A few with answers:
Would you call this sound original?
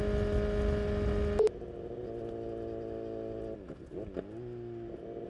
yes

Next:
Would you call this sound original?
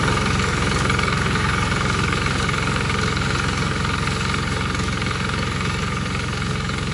no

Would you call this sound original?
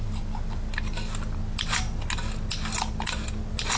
yes